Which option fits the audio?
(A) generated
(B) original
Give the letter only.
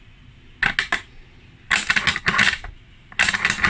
B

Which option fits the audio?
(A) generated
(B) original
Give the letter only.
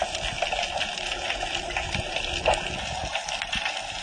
B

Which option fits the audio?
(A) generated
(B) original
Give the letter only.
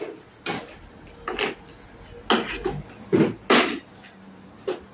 B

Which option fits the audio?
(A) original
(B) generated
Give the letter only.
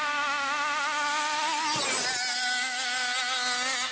A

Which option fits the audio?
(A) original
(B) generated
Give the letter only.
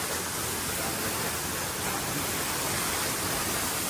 A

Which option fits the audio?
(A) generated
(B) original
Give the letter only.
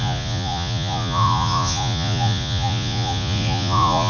A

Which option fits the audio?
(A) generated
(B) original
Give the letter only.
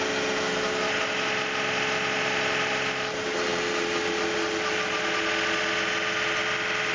B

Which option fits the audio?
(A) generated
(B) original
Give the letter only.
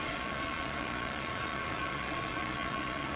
A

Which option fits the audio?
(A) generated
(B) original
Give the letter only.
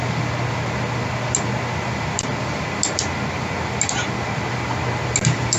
B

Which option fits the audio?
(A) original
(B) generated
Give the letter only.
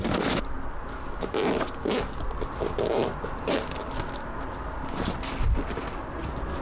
A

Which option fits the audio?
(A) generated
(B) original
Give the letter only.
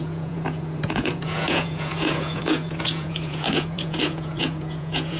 A